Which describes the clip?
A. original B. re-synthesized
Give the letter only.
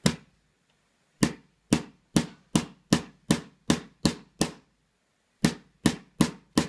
A